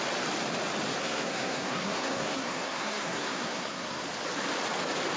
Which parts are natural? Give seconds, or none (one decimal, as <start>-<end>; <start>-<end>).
0.0-0.9; 4.0-5.2